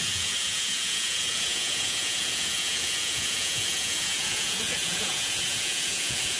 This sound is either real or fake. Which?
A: fake